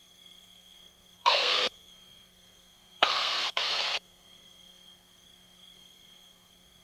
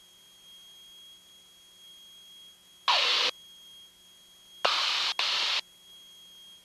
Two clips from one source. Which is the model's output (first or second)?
first